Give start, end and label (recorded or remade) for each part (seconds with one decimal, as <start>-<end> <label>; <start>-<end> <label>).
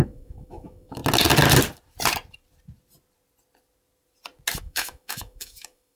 0.0-1.0 remade; 1.0-4.6 recorded; 4.6-6.0 remade